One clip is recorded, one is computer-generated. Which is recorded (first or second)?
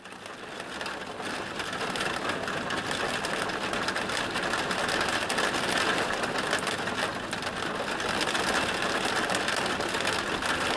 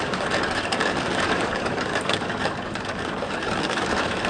first